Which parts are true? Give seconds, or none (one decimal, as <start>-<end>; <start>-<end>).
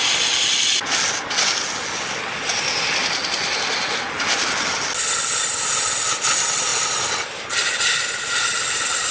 0.0-9.1